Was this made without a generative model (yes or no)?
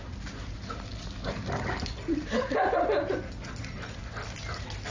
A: yes